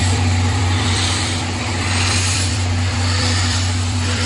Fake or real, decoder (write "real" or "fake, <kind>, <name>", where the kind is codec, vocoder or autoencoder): fake, vocoder, BigVGAN v2